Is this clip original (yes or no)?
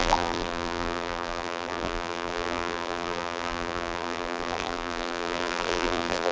no